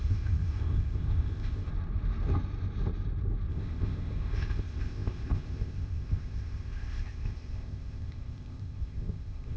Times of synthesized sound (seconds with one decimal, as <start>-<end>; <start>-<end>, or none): 0.0-1.7; 3.5-9.6